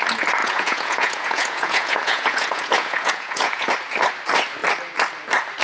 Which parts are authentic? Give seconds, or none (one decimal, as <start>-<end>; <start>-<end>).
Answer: 0.0-0.4; 3.7-5.6